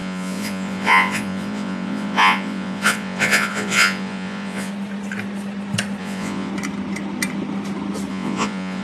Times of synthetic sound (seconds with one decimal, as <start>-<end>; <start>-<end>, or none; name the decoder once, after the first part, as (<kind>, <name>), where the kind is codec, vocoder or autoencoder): 0.0-4.7 (vocoder, Vocos); 6.0-6.5; 8.1-8.8